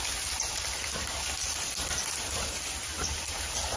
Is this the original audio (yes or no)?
yes